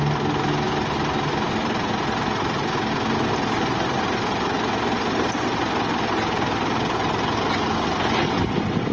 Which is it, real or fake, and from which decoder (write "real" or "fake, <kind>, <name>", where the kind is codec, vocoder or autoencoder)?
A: real